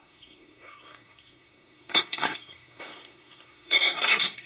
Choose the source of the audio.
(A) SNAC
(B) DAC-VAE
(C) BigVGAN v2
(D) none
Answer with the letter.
A